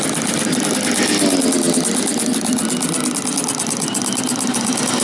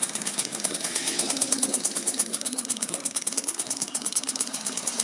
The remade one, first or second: second